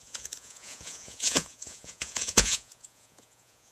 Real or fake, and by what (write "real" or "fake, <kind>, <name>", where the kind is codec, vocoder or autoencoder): fake, vocoder, Vocos